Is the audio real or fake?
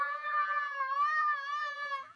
fake